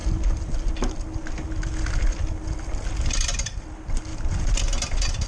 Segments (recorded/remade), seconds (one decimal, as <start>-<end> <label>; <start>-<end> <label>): 0.0-4.1 recorded; 4.1-4.6 remade; 4.6-5.3 recorded